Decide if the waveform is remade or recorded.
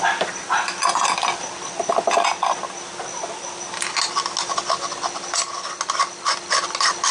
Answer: recorded